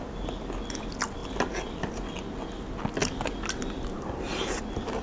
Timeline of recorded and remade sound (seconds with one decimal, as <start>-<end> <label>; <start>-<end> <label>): 0.0-5.0 recorded